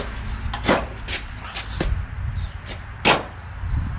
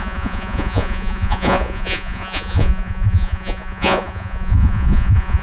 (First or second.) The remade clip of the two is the second